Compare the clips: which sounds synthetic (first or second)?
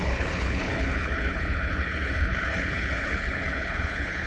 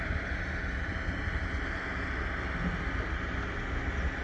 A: first